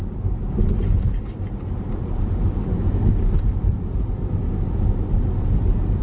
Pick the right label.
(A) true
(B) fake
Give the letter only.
A